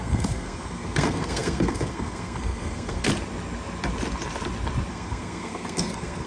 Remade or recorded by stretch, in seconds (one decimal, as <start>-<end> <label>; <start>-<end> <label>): 0.0-3.1 remade; 3.1-4.9 recorded; 4.9-6.3 remade